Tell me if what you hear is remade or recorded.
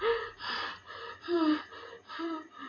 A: remade